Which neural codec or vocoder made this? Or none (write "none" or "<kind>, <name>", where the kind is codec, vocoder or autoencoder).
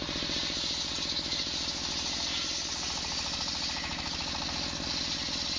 none